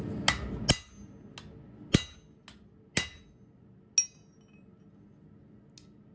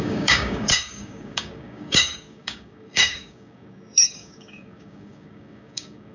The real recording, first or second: first